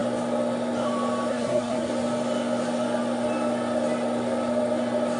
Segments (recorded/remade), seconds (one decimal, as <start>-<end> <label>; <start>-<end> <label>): 0.0-1.3 recorded; 1.3-1.9 remade; 1.9-5.2 recorded